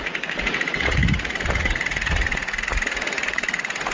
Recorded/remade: remade